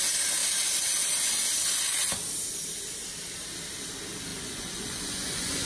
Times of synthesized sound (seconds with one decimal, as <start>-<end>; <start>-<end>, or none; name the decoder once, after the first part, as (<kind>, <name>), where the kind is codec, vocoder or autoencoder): 4.3-5.7 (vocoder, Vocos)